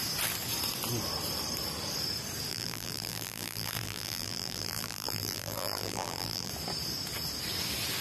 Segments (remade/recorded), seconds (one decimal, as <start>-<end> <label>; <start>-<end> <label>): 0.0-2.5 recorded; 2.5-6.5 remade; 6.5-8.0 recorded